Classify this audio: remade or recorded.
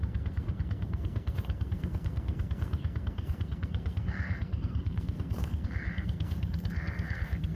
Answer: remade